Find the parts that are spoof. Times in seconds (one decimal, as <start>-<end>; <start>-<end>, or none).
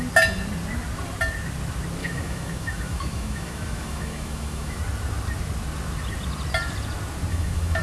2.0-4.8; 7.3-7.8